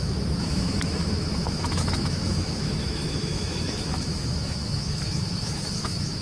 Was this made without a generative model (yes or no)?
no